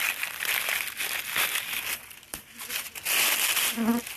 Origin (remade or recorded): remade